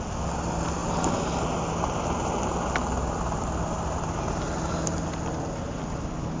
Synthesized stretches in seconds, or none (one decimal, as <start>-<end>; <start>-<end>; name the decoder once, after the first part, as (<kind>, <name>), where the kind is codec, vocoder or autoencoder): none